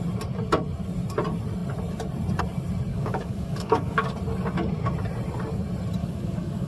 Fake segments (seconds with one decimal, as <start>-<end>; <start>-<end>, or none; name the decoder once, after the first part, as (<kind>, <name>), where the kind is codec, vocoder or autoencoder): 2.9-4.1 (codec, DAC); 6.0-6.7